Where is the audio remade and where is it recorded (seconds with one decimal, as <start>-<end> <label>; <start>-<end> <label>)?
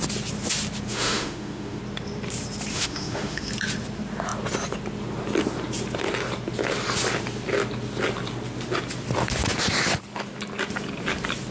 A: 0.0-0.9 recorded; 0.9-1.8 remade; 1.8-2.7 recorded; 2.7-3.5 remade; 3.5-11.5 recorded